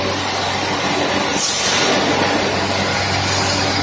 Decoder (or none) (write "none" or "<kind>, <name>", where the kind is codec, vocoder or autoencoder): none